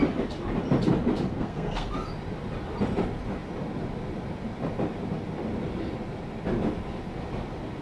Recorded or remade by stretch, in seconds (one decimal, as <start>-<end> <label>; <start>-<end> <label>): 0.0-1.3 recorded; 1.3-1.9 remade; 1.9-7.8 recorded

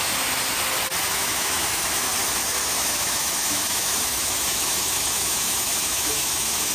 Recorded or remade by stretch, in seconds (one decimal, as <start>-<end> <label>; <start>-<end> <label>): 0.0-1.1 recorded; 1.1-2.1 remade; 2.1-2.6 recorded; 2.6-6.7 remade

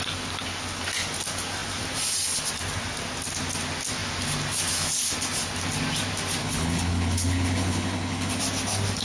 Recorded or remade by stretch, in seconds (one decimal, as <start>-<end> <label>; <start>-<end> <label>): 0.0-6.4 recorded; 6.4-8.4 remade; 8.4-9.0 recorded

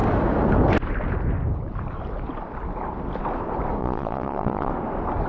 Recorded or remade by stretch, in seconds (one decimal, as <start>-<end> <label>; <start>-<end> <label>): 0.0-3.8 recorded; 3.8-4.7 remade; 4.7-5.3 recorded

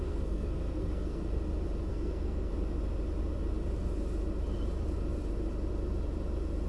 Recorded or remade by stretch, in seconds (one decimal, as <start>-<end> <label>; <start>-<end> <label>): 0.0-1.2 remade; 1.2-1.9 recorded; 1.9-2.5 remade; 2.5-6.7 recorded

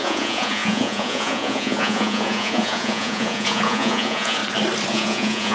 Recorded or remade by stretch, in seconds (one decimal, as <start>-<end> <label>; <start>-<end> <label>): 0.0-4.4 remade; 4.4-4.9 recorded; 4.9-5.5 remade

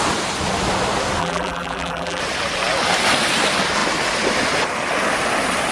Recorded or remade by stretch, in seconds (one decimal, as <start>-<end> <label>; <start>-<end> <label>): 0.0-1.2 recorded; 1.2-2.2 remade; 2.2-5.7 recorded

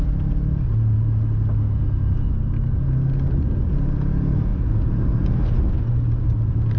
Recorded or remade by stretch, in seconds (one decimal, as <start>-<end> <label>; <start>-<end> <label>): 0.0-4.5 recorded; 4.5-6.8 remade